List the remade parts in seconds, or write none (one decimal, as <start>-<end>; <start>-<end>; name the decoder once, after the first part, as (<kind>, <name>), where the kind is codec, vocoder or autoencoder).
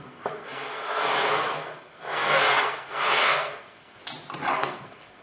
0.0-4.0 (codec, SNAC); 4.5-5.2